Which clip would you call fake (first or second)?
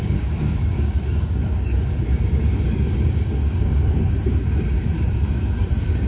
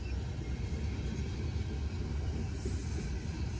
first